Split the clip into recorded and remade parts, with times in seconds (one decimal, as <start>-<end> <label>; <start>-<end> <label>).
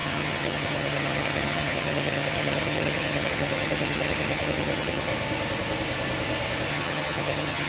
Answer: 0.0-5.1 remade; 5.1-6.7 recorded; 6.7-7.7 remade